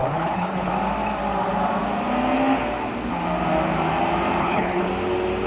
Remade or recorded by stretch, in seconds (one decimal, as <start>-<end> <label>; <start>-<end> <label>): 0.0-0.7 remade; 0.7-4.4 recorded; 4.4-4.9 remade; 4.9-5.5 recorded